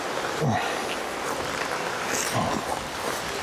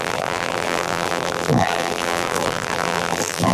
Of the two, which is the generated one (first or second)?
second